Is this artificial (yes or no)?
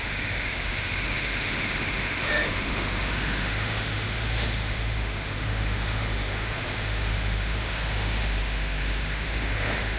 yes